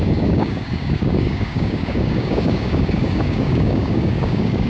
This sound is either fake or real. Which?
fake